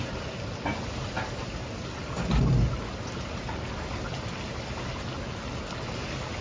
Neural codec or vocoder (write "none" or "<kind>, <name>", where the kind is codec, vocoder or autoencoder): none